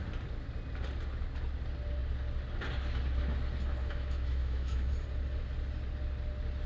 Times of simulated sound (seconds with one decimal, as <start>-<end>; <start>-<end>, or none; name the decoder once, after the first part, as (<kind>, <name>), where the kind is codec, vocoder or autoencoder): 3.8-4.9 (autoencoder, DAC-VAE)